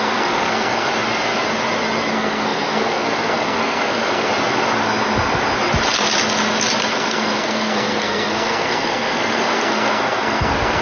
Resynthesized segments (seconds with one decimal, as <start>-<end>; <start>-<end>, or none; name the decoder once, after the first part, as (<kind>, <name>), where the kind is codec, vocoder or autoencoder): 0.0-0.9 (codec, SNAC); 2.1-4.3; 6.9-10.8